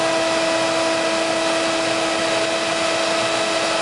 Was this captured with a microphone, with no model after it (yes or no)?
yes